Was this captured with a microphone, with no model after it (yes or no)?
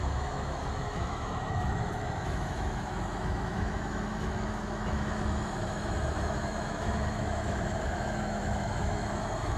no